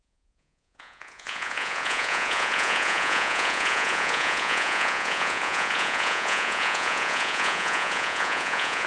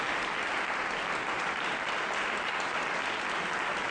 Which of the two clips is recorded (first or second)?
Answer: second